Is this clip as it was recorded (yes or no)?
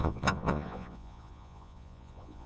no